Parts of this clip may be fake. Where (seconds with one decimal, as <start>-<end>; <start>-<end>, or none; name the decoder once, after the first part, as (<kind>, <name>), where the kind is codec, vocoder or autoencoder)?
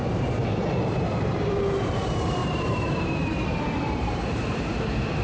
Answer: 1.0-5.2 (vocoder, BigVGAN v2)